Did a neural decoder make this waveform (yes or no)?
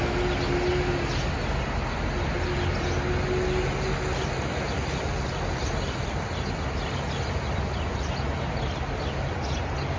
no